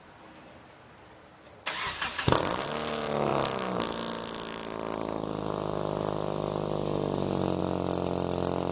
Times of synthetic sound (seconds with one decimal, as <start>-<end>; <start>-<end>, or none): none